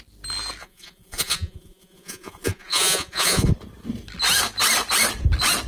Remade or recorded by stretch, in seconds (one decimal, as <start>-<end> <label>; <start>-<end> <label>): 0.0-0.6 recorded; 0.6-3.5 remade; 3.5-5.7 recorded